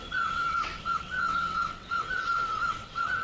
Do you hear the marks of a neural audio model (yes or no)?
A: yes